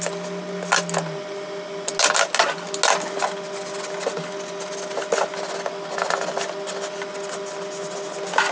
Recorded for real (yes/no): yes